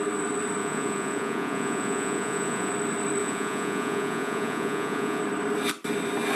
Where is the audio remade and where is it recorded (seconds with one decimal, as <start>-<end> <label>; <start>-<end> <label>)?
0.0-0.6 recorded; 0.6-2.7 remade; 2.7-3.2 recorded; 3.2-5.2 remade; 5.2-6.4 recorded